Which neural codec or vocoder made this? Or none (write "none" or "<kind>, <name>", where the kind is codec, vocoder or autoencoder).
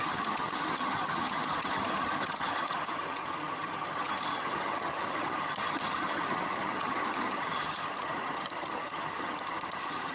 vocoder, HiFi-GAN